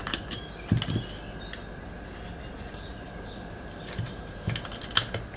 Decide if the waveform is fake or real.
real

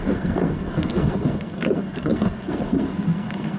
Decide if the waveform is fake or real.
fake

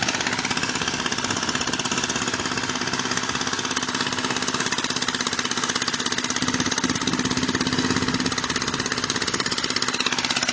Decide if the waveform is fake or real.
real